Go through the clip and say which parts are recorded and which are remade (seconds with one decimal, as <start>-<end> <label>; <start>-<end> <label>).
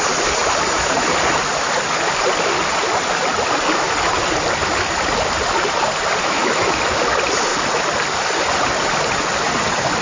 0.0-6.2 recorded; 6.2-6.8 remade; 6.8-10.0 recorded